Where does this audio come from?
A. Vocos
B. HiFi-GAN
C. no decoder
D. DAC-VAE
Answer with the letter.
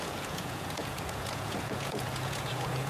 A